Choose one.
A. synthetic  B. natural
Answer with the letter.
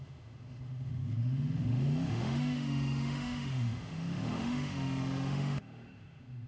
A